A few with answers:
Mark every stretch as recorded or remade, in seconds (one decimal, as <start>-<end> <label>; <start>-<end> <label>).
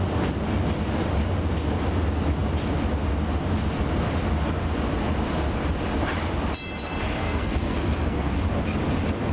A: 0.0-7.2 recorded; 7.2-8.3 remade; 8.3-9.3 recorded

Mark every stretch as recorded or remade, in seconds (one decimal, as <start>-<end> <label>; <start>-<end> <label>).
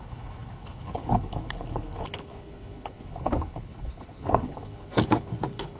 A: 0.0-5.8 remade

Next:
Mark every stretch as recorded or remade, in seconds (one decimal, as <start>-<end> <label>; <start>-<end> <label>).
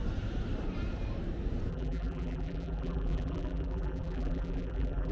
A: 0.0-1.7 recorded; 1.7-5.1 remade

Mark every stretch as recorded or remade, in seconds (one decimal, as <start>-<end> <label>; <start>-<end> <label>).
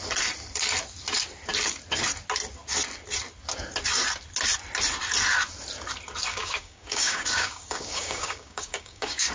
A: 0.0-6.3 recorded; 6.3-9.3 remade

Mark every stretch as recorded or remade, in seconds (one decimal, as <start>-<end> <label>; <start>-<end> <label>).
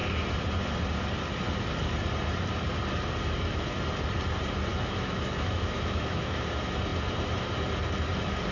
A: 0.0-4.7 recorded; 4.7-6.4 remade; 6.4-8.5 recorded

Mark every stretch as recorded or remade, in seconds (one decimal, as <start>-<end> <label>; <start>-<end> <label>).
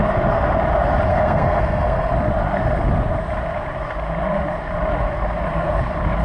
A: 0.0-1.1 recorded; 1.1-2.1 remade; 2.1-6.2 recorded